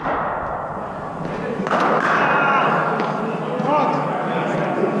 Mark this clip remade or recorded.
recorded